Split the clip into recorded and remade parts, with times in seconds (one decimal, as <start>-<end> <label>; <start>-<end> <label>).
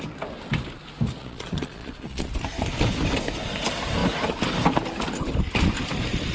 0.0-1.2 recorded; 1.2-2.3 remade; 2.3-6.3 recorded